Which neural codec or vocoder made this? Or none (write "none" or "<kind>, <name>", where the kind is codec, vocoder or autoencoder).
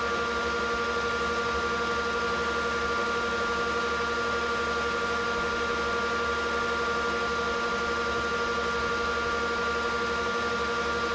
none